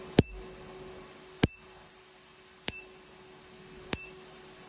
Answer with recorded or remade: recorded